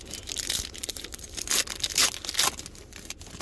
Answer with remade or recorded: recorded